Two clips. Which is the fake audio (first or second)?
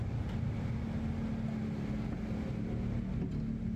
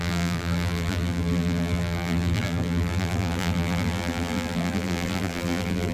second